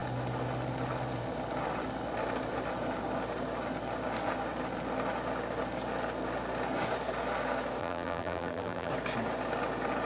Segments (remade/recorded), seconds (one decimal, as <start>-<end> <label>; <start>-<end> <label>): 0.0-7.8 recorded; 7.8-8.9 remade; 8.9-10.0 recorded